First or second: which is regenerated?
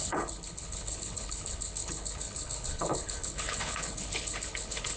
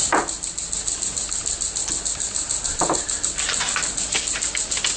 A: first